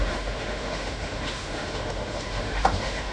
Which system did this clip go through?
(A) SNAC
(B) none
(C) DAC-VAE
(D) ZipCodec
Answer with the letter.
C